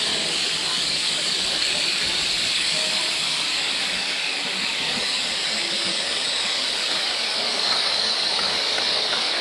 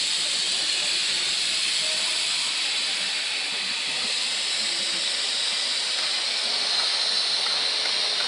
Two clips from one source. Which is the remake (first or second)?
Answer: first